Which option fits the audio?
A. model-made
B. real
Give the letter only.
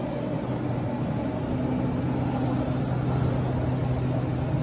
B